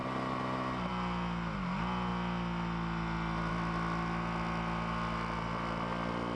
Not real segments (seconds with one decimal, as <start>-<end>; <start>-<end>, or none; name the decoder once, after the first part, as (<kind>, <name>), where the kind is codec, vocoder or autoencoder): none